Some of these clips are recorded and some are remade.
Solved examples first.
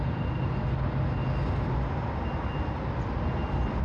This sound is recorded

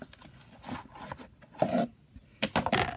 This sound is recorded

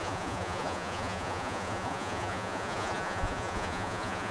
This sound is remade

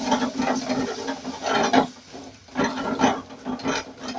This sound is recorded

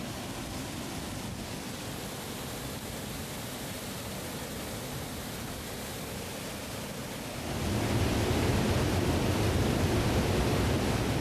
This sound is recorded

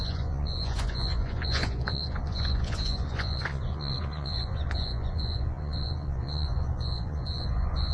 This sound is remade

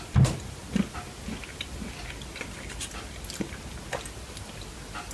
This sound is recorded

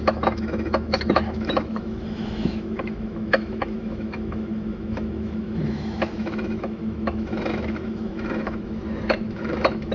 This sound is remade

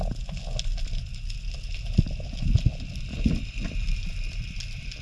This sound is recorded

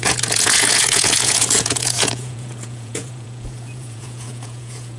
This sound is remade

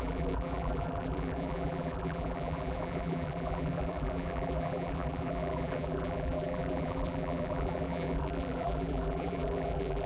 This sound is remade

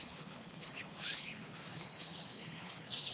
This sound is remade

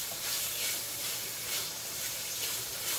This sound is remade